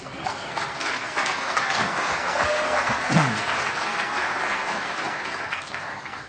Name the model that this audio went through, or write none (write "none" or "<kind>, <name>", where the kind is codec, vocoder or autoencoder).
codec, SNAC